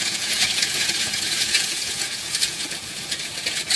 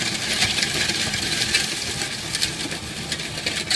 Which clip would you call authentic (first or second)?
second